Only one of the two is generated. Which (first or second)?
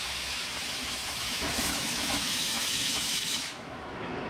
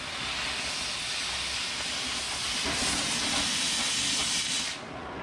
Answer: first